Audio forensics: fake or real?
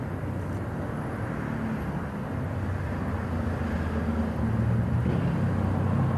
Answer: real